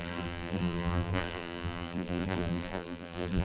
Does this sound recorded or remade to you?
remade